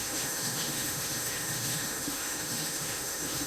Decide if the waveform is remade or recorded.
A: remade